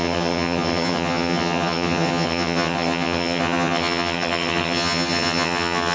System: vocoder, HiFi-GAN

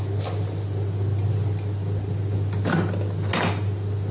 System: none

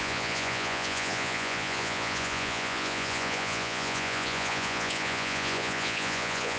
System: vocoder, Vocos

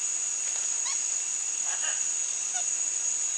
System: none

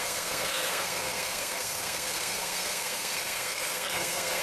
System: codec, SNAC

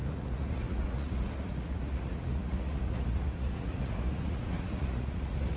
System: vocoder, Vocos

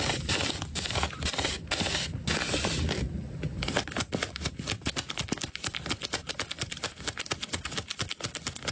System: none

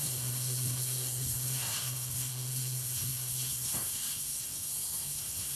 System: codec, SNAC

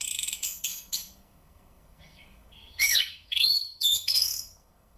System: codec, SNAC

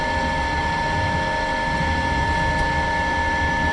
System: none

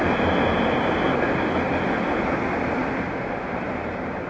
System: none